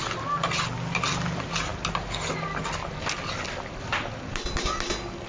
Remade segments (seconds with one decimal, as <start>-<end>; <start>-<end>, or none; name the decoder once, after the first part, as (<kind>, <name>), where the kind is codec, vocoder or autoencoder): none